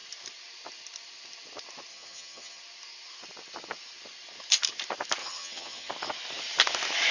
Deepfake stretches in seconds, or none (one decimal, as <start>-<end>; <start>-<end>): 1.9-2.6; 5.2-5.9

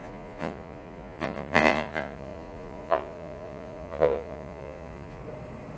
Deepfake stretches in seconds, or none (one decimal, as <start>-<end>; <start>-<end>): 0.0-5.2

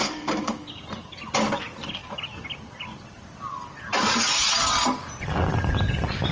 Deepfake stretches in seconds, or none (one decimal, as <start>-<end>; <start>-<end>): 0.0-0.7

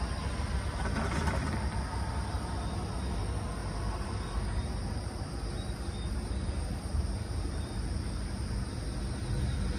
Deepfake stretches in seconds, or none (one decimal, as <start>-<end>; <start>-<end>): 3.6-8.0